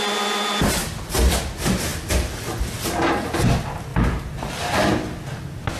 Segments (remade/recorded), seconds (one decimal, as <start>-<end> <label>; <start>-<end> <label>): 0.0-0.8 recorded; 0.8-1.3 remade; 1.3-3.9 recorded; 3.9-4.8 remade; 4.8-5.8 recorded